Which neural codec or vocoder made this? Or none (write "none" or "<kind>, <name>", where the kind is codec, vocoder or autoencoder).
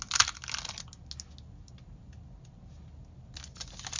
none